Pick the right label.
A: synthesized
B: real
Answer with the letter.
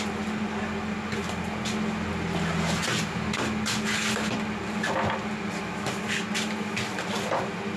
B